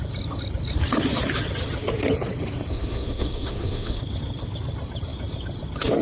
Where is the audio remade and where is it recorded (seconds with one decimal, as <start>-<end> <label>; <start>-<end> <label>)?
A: 0.0-2.7 recorded; 2.7-4.0 remade; 4.0-6.0 recorded